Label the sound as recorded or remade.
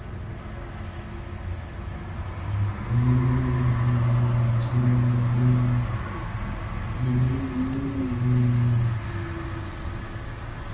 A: recorded